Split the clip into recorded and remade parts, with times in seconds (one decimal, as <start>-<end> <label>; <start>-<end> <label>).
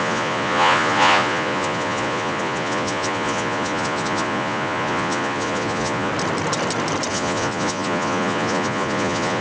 0.0-6.1 remade; 6.1-7.1 recorded; 7.1-9.4 remade